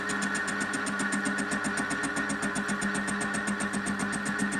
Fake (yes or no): no